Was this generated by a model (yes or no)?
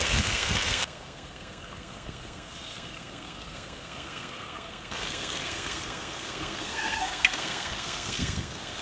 yes